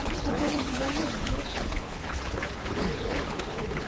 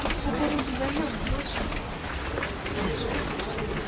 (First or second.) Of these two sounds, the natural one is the second